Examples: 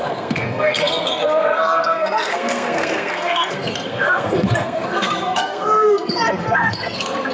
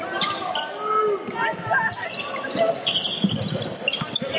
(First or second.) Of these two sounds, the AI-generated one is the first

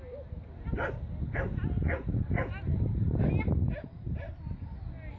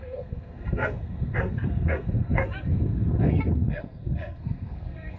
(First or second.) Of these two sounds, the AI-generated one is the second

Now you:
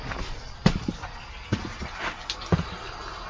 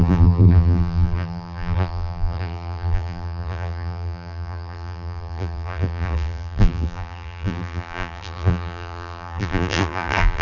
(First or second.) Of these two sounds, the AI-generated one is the second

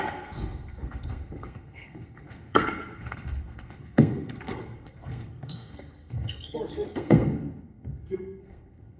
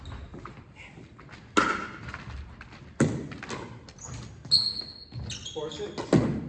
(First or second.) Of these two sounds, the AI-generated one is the first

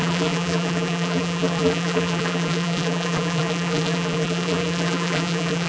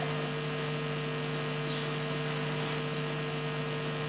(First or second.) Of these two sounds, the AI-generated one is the first